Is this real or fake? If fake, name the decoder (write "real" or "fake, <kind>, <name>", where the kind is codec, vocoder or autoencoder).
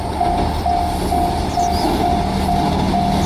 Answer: real